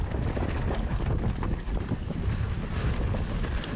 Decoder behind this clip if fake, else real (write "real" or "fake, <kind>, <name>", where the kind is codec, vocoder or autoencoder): real